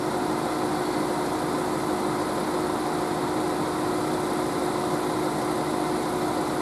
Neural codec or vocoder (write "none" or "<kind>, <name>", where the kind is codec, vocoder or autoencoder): none